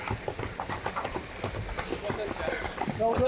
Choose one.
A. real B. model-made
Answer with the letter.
A